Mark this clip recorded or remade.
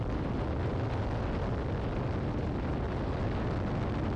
recorded